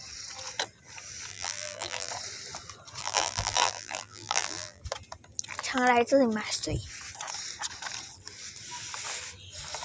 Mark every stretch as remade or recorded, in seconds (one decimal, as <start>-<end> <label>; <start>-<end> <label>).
0.0-1.3 recorded; 1.3-2.1 remade; 2.1-3.0 recorded; 3.0-4.8 remade; 4.8-9.8 recorded